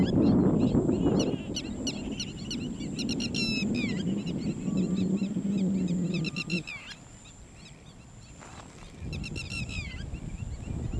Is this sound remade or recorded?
recorded